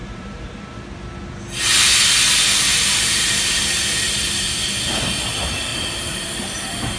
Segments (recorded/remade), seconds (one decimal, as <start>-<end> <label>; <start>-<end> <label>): 0.0-0.6 remade; 0.6-2.7 recorded; 2.7-4.3 remade; 4.3-5.7 recorded; 5.7-7.0 remade